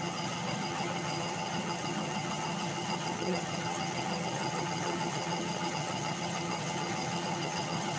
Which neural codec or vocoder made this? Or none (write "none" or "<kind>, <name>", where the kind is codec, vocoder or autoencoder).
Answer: vocoder, HiFi-GAN